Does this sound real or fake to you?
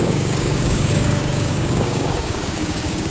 fake